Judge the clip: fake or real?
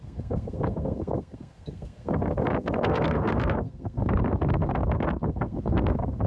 fake